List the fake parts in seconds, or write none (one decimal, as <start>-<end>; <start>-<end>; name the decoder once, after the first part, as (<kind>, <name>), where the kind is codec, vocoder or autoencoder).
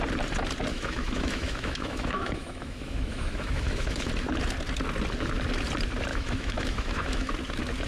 0.7-4.1 (autoencoder, DAC-VAE); 6.1-7.3